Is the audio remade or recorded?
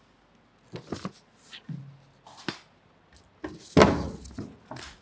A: recorded